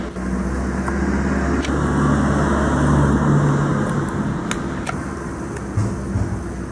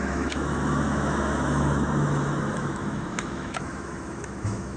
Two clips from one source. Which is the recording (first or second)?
first